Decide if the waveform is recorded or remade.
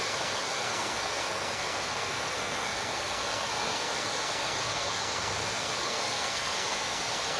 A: remade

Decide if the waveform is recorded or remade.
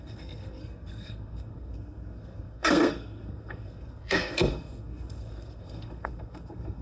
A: remade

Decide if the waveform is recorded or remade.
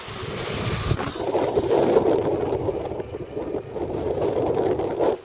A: recorded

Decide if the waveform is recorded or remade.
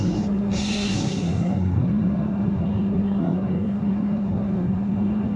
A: remade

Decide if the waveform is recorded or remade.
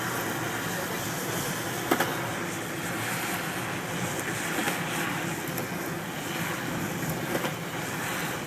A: recorded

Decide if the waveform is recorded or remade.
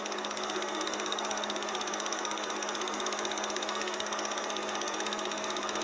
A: remade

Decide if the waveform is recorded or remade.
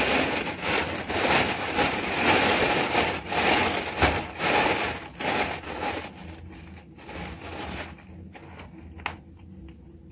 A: recorded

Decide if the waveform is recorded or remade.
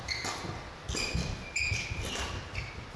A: recorded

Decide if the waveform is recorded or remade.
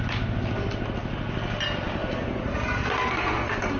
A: recorded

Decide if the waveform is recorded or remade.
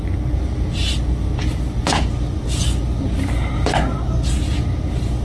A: recorded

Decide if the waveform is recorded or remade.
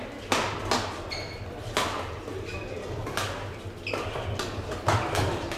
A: recorded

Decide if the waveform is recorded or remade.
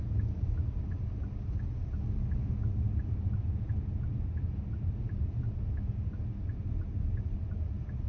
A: recorded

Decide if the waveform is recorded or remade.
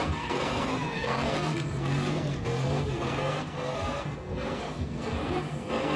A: remade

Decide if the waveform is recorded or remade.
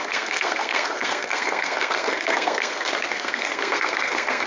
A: remade